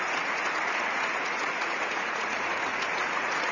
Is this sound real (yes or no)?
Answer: no